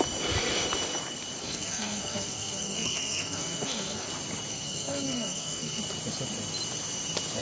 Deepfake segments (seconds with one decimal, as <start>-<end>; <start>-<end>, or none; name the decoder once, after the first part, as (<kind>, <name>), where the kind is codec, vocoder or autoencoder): 1.4-4.1 (codec, SNAC); 4.5-5.8

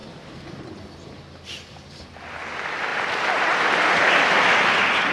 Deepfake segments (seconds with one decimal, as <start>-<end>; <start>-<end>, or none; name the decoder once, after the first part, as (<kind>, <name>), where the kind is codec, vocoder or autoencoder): none

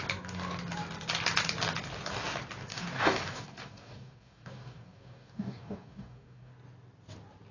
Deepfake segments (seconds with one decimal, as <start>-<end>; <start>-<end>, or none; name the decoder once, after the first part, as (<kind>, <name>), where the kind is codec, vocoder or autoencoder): 2.7-6.5 (codec, DAC)

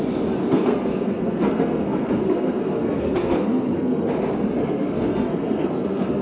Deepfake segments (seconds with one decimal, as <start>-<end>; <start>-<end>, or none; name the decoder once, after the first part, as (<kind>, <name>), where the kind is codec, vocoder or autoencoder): 0.4-4.1 (codec, SNAC); 4.6-6.2

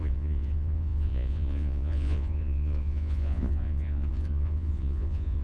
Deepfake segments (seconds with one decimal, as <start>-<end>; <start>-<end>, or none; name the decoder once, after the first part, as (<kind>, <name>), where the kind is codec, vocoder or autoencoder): 0.0-5.4 (vocoder, Vocos)

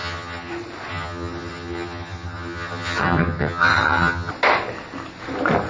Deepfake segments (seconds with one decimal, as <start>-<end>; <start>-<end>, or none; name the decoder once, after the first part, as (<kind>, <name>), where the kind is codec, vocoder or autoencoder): 0.0-0.5 (vocoder, HiFi-GAN); 0.9-4.3

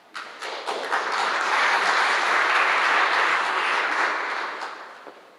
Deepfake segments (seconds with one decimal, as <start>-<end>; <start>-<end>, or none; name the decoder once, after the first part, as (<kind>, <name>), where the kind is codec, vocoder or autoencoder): 1.2-1.8 (codec, DAC); 3.3-3.9